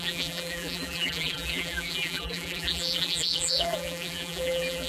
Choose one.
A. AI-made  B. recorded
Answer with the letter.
A